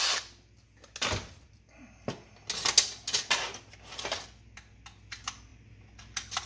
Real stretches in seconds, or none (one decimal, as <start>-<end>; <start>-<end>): 0.0-6.5

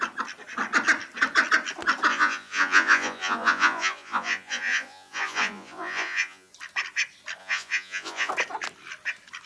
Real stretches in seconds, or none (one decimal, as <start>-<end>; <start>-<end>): 0.0-2.1; 6.5-7.4; 8.3-9.5

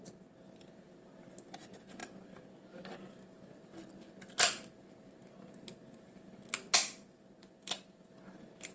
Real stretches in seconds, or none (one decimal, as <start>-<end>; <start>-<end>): 0.0-6.8; 8.1-8.7

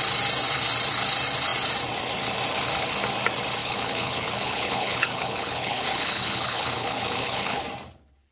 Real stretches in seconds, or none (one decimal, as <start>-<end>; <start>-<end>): 0.0-3.6; 7.6-8.3

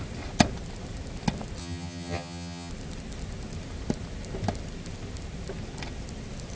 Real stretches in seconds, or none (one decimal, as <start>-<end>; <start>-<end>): 0.0-1.6; 2.7-6.6

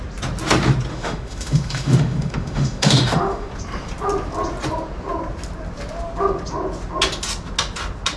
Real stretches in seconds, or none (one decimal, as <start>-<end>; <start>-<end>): 0.0-0.9; 3.5-8.2